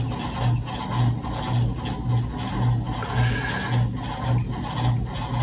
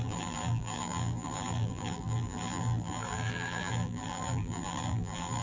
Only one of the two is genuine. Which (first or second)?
first